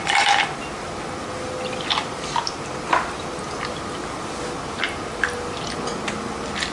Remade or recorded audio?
recorded